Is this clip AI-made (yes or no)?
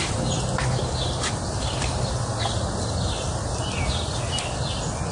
no